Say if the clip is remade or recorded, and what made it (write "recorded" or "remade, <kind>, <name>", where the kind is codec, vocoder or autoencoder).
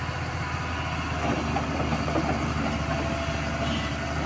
recorded